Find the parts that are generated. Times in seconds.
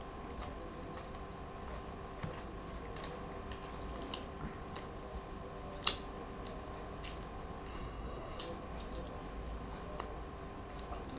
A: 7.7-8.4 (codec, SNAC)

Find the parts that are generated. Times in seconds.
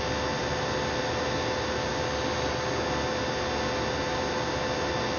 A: none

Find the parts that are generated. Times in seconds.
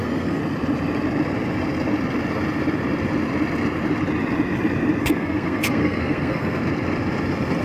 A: 0.0-0.4 (codec, SNAC); 5.0-6.6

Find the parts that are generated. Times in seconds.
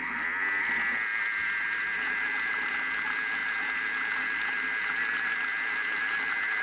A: none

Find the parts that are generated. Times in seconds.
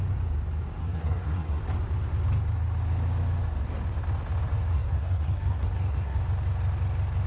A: 0.8-1.6 (codec, SNAC); 4.7-6.2